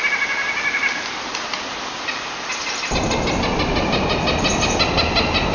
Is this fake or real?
real